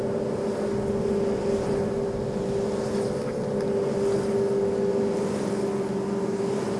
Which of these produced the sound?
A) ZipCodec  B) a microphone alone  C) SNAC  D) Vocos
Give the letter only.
B